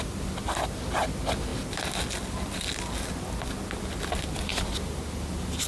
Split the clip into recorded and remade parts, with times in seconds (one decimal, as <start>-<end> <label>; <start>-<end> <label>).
0.0-5.7 recorded